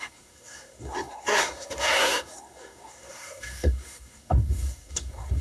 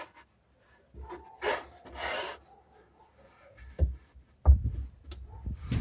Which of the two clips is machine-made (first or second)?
first